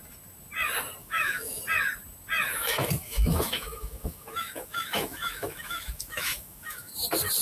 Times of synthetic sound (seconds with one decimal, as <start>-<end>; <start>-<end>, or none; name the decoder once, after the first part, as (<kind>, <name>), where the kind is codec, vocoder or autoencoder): 1.0-1.6 (autoencoder, DAC-VAE); 2.5-6.9